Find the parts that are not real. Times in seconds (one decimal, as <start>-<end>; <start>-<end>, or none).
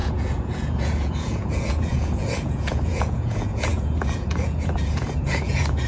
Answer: 0.0-5.9